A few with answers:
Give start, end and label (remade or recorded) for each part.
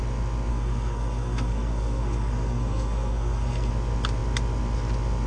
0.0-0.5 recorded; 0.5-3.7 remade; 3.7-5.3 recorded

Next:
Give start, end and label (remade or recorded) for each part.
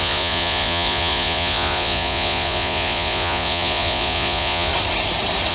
0.0-4.7 remade; 4.7-5.5 recorded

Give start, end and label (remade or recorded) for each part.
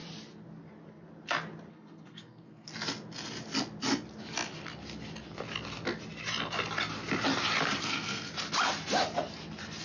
0.0-1.7 recorded; 1.7-2.7 remade; 2.7-7.8 recorded; 7.8-8.3 remade; 8.3-9.8 recorded